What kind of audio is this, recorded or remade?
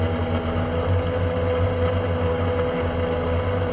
recorded